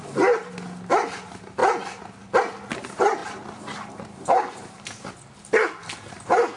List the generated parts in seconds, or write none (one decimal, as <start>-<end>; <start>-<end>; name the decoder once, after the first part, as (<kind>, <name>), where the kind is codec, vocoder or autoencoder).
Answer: 3.2-5.1 (vocoder, BigVGAN v2)